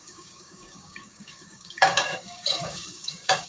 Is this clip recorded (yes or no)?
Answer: no